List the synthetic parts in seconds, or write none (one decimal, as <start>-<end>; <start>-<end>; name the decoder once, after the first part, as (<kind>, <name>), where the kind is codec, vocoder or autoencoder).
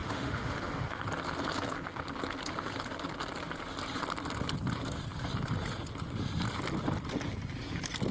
0.0-1.0 (autoencoder, DAC-VAE)